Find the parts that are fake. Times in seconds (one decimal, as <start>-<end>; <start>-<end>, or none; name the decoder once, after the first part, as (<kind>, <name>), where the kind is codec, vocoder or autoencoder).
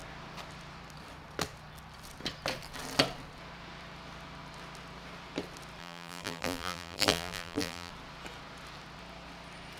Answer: 5.8-7.9 (vocoder, BigVGAN v2)